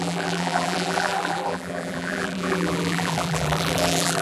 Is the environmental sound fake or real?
fake